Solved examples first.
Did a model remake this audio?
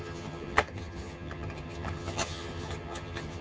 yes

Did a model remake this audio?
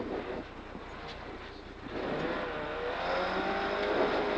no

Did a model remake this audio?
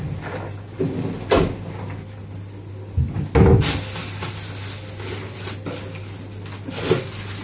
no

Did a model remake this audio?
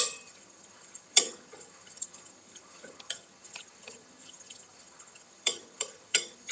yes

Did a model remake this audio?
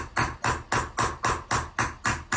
no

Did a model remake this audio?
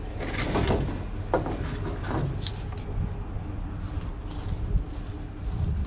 no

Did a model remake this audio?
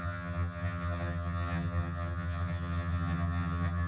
yes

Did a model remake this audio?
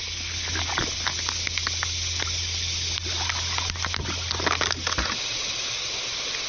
no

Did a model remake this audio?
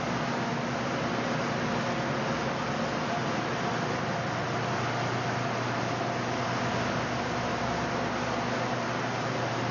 no